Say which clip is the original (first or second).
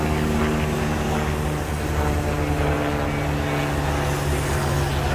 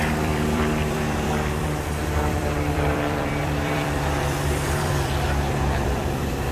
first